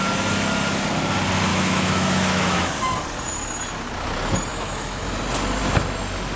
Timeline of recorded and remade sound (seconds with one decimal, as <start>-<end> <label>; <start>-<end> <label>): 0.0-1.5 recorded; 1.5-2.7 remade; 2.7-4.5 recorded; 4.5-5.2 remade; 5.2-6.4 recorded